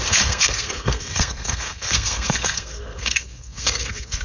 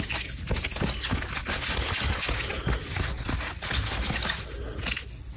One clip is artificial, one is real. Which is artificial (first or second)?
first